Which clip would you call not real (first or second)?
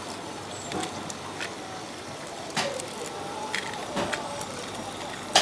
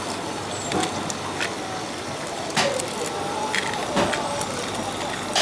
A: first